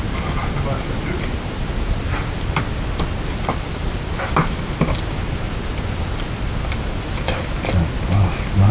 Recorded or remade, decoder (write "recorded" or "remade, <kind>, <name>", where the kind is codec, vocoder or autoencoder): recorded